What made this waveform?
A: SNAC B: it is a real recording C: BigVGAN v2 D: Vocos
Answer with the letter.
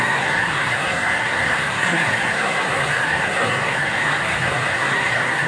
A